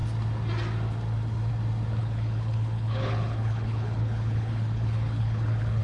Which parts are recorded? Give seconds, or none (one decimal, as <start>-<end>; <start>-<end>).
0.0-2.0